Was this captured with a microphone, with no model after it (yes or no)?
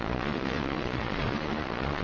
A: no